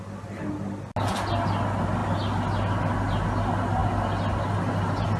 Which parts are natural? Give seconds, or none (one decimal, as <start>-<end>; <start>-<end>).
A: 0.0-5.2